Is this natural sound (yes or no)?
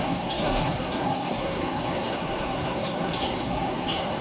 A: no